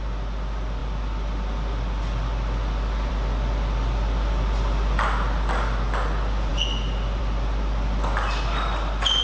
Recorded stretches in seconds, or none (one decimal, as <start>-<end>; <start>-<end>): 0.0-9.2